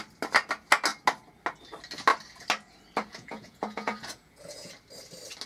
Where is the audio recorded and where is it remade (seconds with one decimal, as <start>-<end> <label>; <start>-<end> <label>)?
0.0-3.1 recorded; 3.1-4.7 remade; 4.7-5.5 recorded